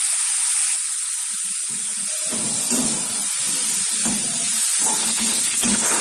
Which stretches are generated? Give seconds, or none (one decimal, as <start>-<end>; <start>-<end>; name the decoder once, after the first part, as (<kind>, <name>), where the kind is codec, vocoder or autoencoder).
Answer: 5.0-6.0 (codec, HILCodec)